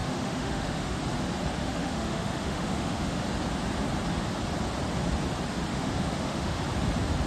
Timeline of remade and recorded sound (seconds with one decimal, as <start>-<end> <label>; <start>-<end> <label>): 0.0-1.0 remade; 1.0-1.6 recorded; 1.6-3.2 remade; 3.2-5.7 recorded; 5.7-6.6 remade; 6.6-7.3 recorded

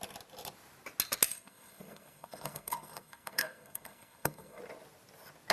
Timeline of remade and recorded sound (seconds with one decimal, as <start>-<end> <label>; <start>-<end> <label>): 0.0-1.3 recorded; 1.3-4.6 remade; 4.6-5.5 recorded

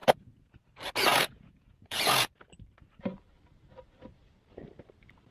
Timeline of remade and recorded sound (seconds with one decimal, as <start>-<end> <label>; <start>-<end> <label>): 0.0-0.5 remade; 0.5-1.1 recorded; 1.1-2.3 remade; 2.3-5.3 recorded

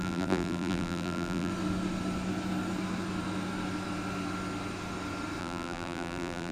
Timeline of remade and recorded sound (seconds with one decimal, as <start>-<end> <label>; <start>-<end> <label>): 0.0-1.5 remade; 1.5-5.4 recorded; 5.4-6.5 remade

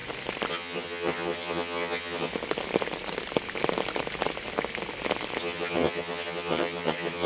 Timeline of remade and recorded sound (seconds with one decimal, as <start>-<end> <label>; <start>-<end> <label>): 0.0-0.5 recorded; 0.5-2.3 remade; 2.3-5.4 recorded; 5.4-7.3 remade

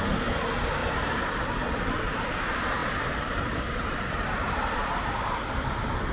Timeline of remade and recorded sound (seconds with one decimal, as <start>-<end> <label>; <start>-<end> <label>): 0.0-0.8 recorded; 0.8-2.3 remade; 2.3-2.8 recorded; 2.8-5.1 remade; 5.1-6.1 recorded